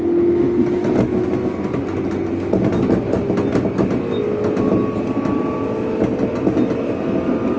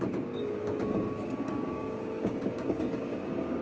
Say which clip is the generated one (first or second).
second